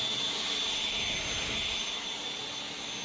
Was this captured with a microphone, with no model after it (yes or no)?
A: yes